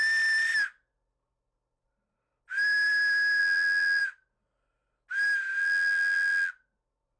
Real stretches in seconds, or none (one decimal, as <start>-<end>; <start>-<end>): 0.0-3.4; 4.0-5.6; 6.5-7.2